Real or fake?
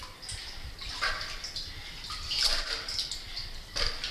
real